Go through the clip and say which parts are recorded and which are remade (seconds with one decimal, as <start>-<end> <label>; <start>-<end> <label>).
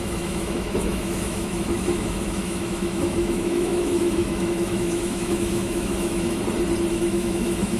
0.0-6.4 remade; 6.4-6.9 recorded; 6.9-7.8 remade